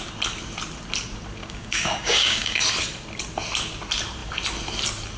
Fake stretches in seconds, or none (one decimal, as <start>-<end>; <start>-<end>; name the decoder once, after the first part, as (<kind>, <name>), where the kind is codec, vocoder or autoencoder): 1.4-2.6 (codec, DAC)